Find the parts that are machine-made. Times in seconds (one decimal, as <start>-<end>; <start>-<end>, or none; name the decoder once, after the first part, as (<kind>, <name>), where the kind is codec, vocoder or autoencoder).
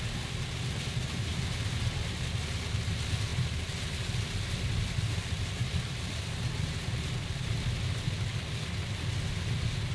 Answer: 1.3-2.2 (vocoder, BigVGAN v2); 3.3-8.6